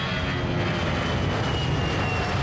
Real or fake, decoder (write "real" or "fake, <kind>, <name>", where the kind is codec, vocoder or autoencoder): real